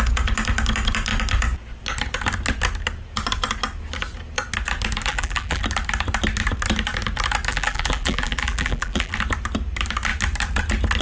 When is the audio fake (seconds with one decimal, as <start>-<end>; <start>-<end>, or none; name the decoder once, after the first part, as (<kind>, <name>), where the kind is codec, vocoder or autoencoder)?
5.1-5.6 (vocoder, BigVGAN v2); 7.5-9.1